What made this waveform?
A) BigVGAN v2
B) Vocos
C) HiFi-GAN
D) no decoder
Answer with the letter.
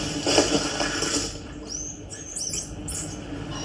D